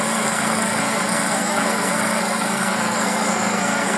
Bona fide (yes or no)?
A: no